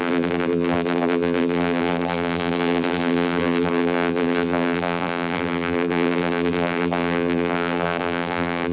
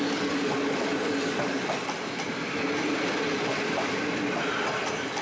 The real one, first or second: second